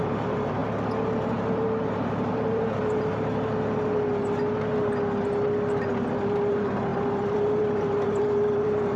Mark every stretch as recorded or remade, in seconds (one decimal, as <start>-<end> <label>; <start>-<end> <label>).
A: 0.0-0.6 remade; 0.6-1.3 recorded; 1.3-3.1 remade; 3.1-6.1 recorded; 6.1-9.0 remade